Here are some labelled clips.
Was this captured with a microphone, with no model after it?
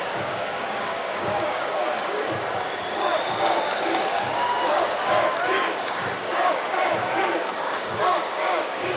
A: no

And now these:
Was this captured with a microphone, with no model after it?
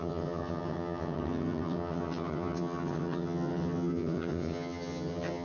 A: no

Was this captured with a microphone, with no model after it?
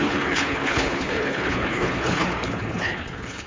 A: no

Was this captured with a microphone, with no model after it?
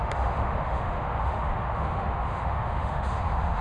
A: no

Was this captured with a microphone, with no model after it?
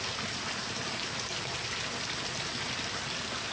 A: yes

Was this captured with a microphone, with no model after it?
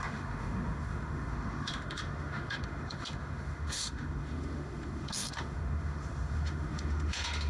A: no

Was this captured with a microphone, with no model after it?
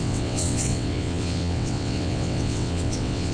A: no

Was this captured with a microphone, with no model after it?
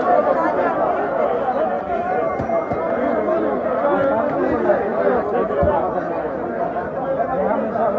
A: yes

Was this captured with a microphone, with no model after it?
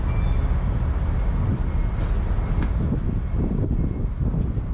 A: yes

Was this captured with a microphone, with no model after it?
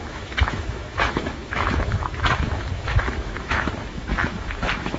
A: no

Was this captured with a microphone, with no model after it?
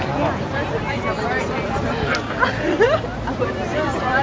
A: yes